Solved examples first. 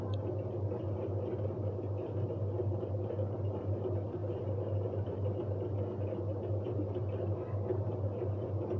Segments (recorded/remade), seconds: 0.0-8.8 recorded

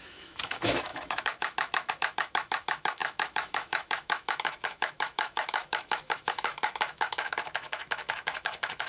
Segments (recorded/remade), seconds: 0.0-8.9 remade